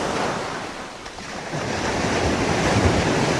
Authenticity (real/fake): real